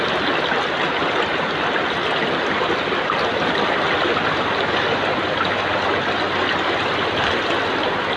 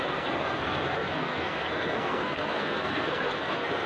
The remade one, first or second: second